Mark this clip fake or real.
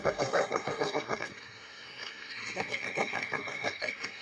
fake